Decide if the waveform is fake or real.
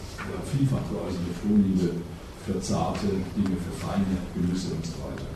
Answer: real